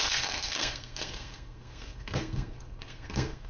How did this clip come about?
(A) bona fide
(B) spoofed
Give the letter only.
B